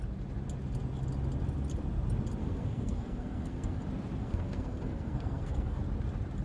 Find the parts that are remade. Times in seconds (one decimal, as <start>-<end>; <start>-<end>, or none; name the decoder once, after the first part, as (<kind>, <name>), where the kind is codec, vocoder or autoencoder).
2.4-3.8 (codec, SNAC); 4.2-5.8